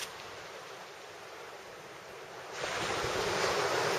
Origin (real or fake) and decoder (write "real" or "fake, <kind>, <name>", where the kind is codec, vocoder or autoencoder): real